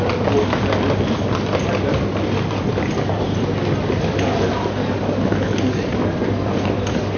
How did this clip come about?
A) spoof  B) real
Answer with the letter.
B